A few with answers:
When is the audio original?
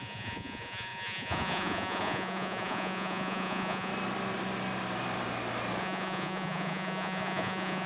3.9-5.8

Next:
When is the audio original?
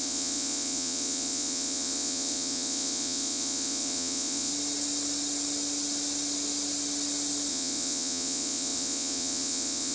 4.5-7.5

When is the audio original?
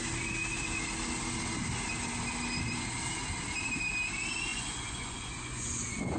0.0-4.5